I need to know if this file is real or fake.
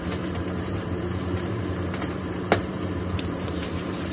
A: fake